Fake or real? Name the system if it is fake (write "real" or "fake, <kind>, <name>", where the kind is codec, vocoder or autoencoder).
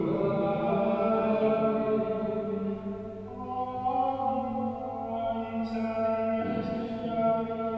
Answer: real